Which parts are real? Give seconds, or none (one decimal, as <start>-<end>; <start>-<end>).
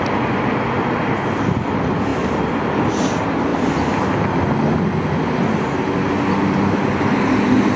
0.0-7.8